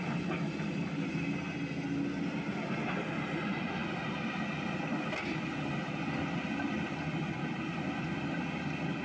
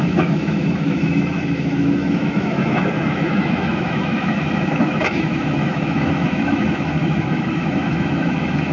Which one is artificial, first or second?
second